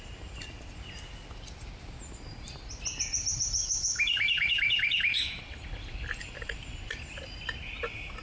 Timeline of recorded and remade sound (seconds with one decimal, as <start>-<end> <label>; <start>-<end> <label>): 0.0-3.6 recorded; 3.6-5.4 remade; 5.4-8.2 recorded